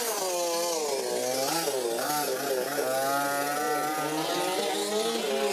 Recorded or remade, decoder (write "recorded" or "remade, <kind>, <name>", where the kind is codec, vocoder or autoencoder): recorded